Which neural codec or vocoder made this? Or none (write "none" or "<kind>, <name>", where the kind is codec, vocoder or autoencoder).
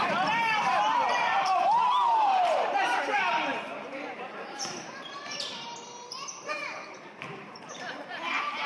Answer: vocoder, BigVGAN v2